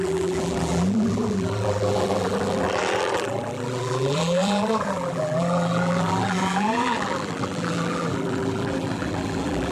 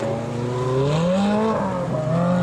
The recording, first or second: second